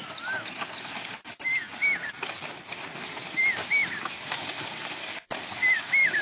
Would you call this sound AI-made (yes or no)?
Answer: no